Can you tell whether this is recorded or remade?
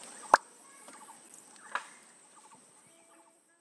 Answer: recorded